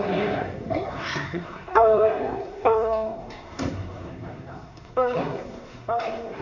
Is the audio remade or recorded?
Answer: remade